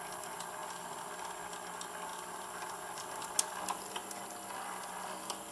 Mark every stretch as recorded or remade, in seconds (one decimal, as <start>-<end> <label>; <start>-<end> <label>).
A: 0.0-2.1 recorded; 2.1-3.2 remade; 3.2-5.5 recorded